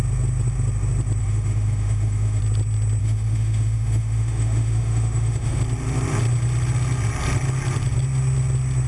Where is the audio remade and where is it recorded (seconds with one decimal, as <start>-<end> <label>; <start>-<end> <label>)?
0.0-1.2 recorded; 1.2-2.4 remade; 2.4-3.0 recorded; 3.0-5.6 remade; 5.6-8.9 recorded